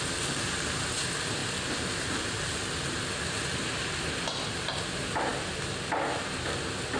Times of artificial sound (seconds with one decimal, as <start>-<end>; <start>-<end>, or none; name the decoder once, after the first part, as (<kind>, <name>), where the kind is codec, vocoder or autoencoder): none